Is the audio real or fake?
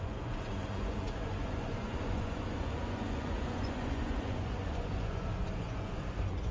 fake